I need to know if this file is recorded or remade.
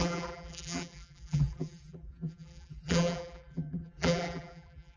remade